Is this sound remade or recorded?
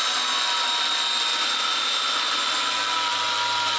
recorded